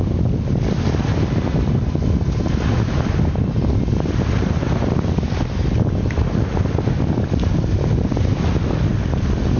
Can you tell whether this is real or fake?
real